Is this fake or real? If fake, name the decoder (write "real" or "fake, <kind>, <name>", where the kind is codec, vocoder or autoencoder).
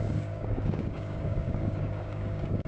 fake, codec, DAC